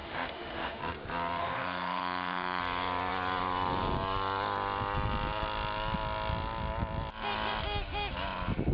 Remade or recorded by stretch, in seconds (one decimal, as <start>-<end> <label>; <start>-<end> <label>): 0.0-0.8 remade; 0.8-1.4 recorded; 1.4-2.6 remade; 2.6-8.7 recorded